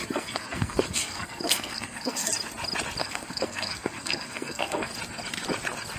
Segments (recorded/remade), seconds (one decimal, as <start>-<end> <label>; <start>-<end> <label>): 0.0-2.3 remade; 2.3-3.0 recorded; 3.0-4.9 remade; 4.9-6.0 recorded